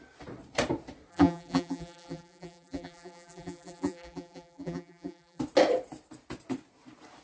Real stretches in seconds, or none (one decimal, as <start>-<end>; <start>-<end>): 0.0-1.1; 5.4-7.2